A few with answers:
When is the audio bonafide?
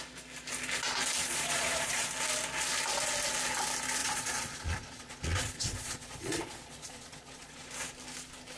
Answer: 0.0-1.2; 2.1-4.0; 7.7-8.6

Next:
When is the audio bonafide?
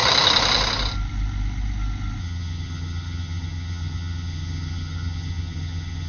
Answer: 0.0-2.2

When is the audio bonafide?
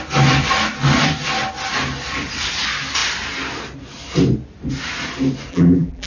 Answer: 0.0-5.5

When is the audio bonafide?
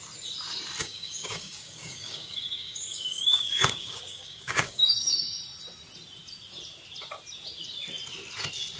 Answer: 0.0-0.8; 5.4-8.8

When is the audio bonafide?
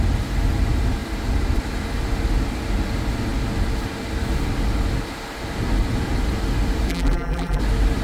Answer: 0.0-6.9; 7.6-8.0